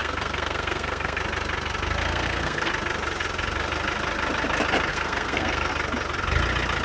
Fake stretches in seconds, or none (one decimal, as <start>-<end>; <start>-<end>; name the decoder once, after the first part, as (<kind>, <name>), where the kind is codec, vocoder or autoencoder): 0.0-1.2 (codec, SNAC); 2.1-2.7; 4.9-5.7